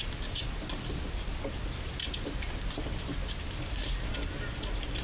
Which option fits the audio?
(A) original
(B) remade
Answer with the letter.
A